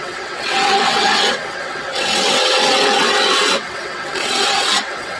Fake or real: fake